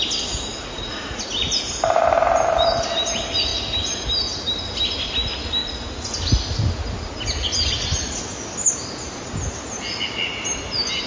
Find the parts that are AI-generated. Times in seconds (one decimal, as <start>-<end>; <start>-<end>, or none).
0.5-1.2; 5.6-6.1